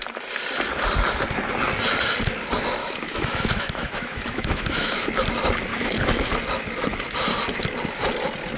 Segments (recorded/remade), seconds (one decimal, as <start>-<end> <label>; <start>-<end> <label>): 0.0-2.8 recorded; 2.8-4.9 remade; 4.9-5.7 recorded; 5.7-6.3 remade; 6.3-8.6 recorded